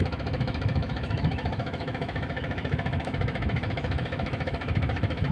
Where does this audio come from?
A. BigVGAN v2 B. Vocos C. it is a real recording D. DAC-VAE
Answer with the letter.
D